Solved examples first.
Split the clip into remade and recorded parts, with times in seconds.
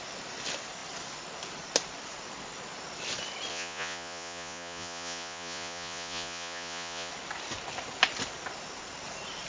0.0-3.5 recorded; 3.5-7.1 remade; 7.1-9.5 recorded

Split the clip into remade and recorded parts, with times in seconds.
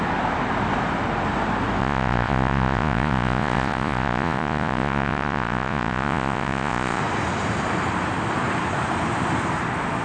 0.0-1.8 recorded; 1.8-7.0 remade; 7.0-10.0 recorded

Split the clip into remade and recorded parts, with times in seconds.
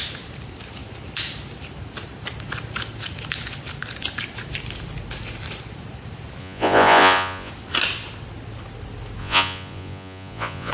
0.0-6.4 recorded; 6.4-7.5 remade; 7.5-9.2 recorded; 9.2-10.7 remade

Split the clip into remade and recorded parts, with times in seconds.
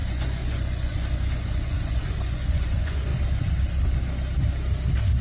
0.0-3.1 remade; 3.1-5.2 recorded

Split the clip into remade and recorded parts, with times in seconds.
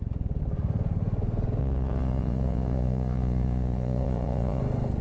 0.0-1.6 recorded; 1.6-4.6 remade; 4.6-5.0 recorded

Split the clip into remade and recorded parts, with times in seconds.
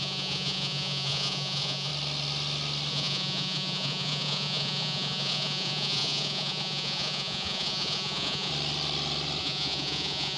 0.0-1.9 remade; 1.9-2.9 recorded; 2.9-8.5 remade; 8.5-9.4 recorded; 9.4-10.4 remade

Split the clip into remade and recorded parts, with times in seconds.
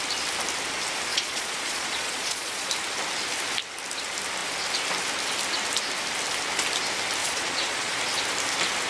0.0-1.1 recorded; 1.1-2.7 remade; 2.7-7.2 recorded; 7.2-7.9 remade; 7.9-8.9 recorded